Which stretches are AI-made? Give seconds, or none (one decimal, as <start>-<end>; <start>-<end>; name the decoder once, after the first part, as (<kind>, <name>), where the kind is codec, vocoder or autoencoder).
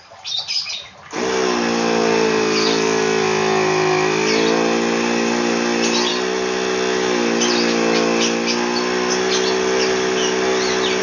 none